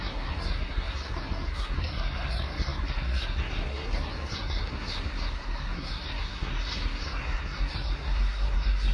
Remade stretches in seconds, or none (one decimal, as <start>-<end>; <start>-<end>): 0.0-8.9